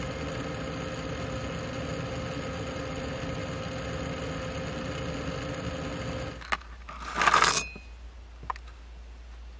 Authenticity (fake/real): real